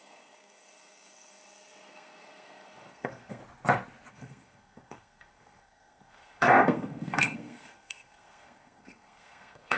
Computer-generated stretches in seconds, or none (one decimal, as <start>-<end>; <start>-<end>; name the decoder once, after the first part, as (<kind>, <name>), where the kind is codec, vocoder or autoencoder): 0.0-3.4 (codec, SNAC); 4.1-9.8